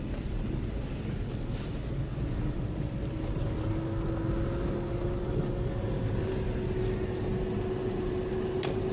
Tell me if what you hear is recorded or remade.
recorded